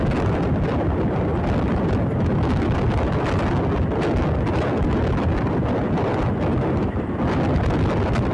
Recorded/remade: recorded